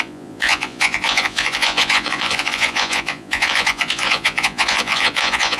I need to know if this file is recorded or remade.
remade